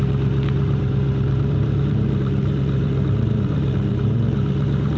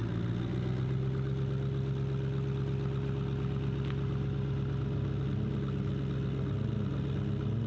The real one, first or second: second